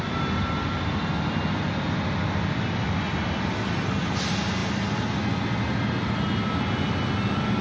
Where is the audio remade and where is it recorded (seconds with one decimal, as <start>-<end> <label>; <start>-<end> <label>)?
0.0-7.6 recorded